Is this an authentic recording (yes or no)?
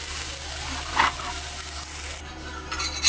yes